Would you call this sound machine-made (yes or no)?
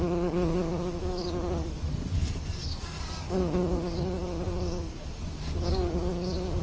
yes